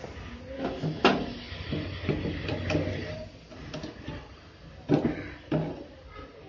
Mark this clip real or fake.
real